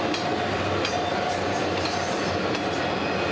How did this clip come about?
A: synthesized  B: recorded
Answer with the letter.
B